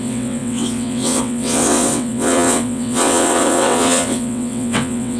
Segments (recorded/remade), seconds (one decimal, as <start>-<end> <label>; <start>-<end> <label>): 0.0-5.2 remade